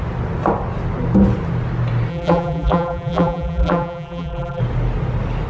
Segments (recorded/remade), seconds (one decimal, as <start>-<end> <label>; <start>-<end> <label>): 0.0-2.1 recorded; 2.1-4.6 remade; 4.6-5.5 recorded